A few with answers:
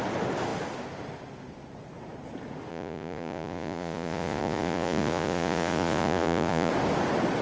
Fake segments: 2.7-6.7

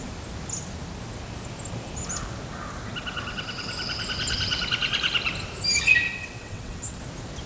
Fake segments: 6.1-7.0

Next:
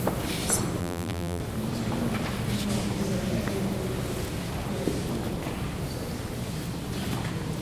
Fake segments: 0.8-1.4

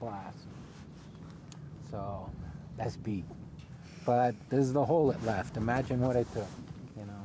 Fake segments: 2.1-3.4; 3.9-7.2